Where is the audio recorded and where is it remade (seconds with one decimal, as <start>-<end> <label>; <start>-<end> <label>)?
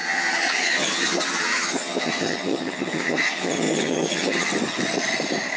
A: 0.0-4.5 remade; 4.5-5.6 recorded